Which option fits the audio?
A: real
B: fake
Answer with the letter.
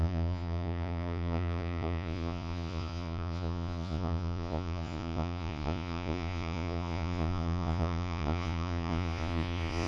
B